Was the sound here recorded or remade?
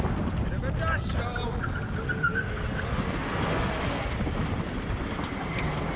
recorded